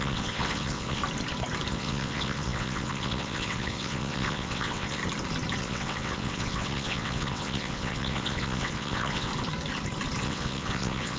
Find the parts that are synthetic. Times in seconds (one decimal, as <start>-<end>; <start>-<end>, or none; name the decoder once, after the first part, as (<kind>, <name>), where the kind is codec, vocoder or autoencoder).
0.0-1.0 (vocoder, WaveNeXt); 1.7-5.0; 5.6-9.3; 10.2-11.2